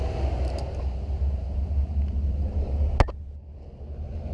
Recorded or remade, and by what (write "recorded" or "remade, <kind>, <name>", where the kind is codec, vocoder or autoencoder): recorded